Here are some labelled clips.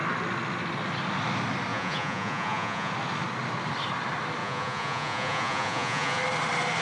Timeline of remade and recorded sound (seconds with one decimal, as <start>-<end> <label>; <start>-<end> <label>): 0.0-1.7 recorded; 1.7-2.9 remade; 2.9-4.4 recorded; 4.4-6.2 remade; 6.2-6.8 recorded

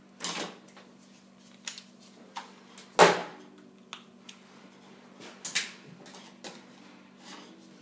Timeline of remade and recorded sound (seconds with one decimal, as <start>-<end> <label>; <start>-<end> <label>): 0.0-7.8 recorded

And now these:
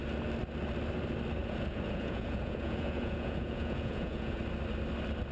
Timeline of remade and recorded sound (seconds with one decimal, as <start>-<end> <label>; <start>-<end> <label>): 0.0-1.4 recorded; 1.4-4.4 remade; 4.4-5.3 recorded

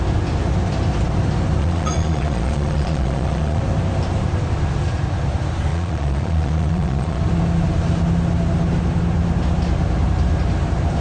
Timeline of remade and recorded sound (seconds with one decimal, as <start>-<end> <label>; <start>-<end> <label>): 0.0-1.6 recorded; 1.6-3.6 remade; 3.6-5.7 recorded; 5.7-7.2 remade; 7.2-11.0 recorded

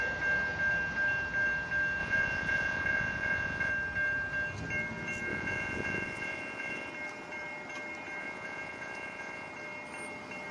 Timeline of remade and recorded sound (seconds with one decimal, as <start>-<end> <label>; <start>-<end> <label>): 0.0-2.0 recorded; 2.0-3.7 remade; 3.7-5.3 recorded; 5.3-6.9 remade; 6.9-8.2 recorded; 8.2-9.5 remade; 9.5-10.5 recorded

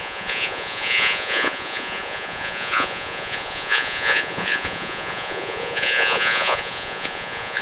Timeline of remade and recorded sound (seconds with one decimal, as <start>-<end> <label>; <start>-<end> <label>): 0.0-7.6 remade